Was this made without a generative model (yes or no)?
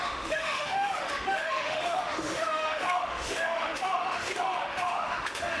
no